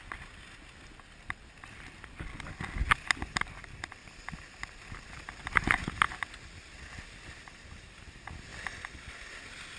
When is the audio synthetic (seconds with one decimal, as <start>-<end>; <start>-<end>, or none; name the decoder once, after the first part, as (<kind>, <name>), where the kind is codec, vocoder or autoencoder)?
none